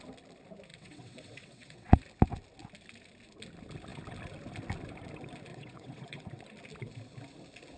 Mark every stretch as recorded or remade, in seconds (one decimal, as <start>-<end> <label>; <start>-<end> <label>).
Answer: 0.0-0.7 recorded; 0.7-2.0 remade; 2.0-5.5 recorded; 5.5-6.4 remade; 6.4-7.8 recorded